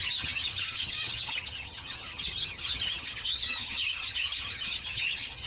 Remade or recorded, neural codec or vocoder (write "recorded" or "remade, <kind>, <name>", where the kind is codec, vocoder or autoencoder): remade, vocoder, HiFi-GAN